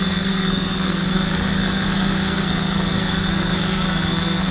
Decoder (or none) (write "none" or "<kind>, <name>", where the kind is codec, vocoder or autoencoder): codec, SNAC